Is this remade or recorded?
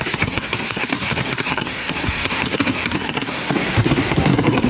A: remade